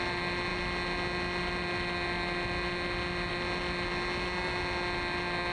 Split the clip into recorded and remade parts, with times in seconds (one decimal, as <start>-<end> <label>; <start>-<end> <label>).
0.0-5.5 recorded